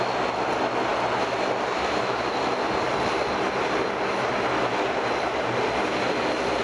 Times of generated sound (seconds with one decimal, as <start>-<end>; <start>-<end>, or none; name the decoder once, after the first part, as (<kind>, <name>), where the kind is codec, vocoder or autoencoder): none